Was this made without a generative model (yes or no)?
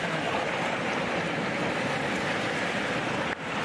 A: yes